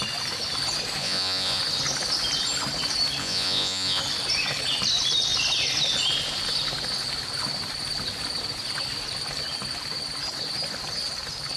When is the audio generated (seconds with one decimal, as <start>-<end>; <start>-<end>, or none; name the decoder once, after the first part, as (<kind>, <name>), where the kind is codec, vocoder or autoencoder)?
1.0-1.6 (vocoder, Vocos); 3.2-4.0